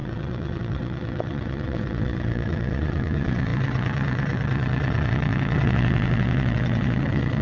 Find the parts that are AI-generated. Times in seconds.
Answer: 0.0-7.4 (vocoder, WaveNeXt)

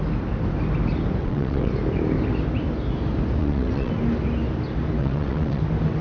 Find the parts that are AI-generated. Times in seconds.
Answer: 1.2-1.7 (vocoder, WaveNeXt); 3.4-3.9; 5.0-5.6

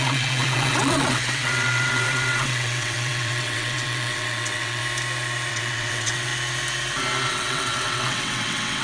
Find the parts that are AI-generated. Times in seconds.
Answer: 0.0-4.8 (vocoder, WaveNeXt); 5.5-6.3; 7.3-8.8

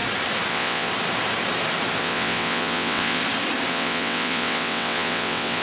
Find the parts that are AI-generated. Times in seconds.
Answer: 0.5-0.9 (vocoder, WaveNeXt); 2.0-3.2; 3.7-5.6

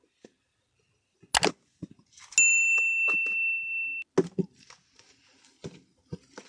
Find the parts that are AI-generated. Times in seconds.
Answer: none